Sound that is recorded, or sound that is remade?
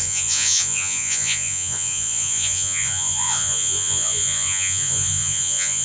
remade